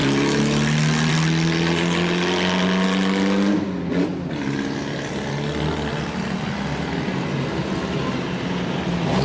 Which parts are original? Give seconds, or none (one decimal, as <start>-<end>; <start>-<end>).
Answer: 0.0-9.2